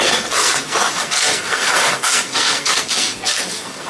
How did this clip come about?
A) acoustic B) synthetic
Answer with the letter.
B